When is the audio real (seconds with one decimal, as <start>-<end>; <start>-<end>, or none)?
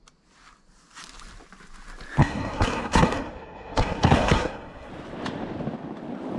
0.0-2.2; 4.9-6.4